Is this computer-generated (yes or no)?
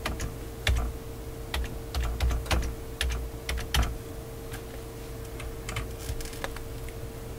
no